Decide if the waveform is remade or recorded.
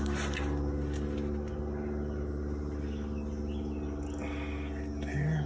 recorded